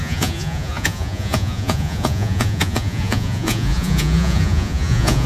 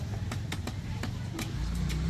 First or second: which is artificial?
first